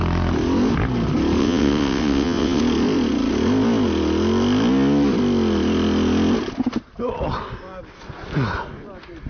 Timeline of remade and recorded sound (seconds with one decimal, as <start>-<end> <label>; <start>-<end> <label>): 0.0-1.4 recorded; 1.4-2.6 remade; 2.6-9.3 recorded